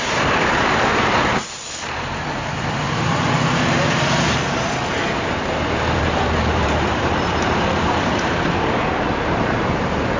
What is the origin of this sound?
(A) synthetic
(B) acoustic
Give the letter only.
A